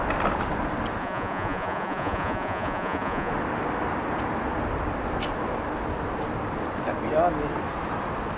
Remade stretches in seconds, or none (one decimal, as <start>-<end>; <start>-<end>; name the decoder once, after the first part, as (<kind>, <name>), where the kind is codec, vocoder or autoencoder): 1.0-3.3 (vocoder, Vocos)